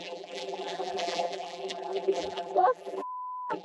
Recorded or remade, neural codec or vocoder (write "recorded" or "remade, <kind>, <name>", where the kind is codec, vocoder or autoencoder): remade, vocoder, BigVGAN v2